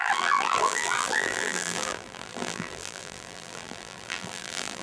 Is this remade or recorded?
remade